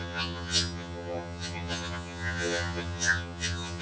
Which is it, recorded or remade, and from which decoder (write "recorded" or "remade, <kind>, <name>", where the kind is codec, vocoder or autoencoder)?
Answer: remade, vocoder, HiFi-GAN